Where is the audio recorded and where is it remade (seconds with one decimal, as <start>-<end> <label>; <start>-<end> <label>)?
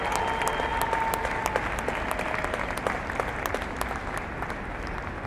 0.0-5.3 recorded